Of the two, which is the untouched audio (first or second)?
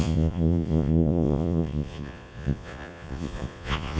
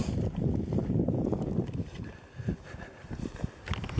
second